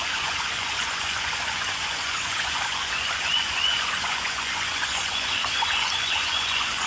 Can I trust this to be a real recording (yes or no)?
no